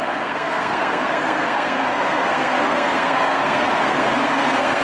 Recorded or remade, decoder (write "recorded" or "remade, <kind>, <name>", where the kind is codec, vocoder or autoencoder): remade, codec, SNAC